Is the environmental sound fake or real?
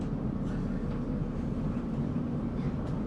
real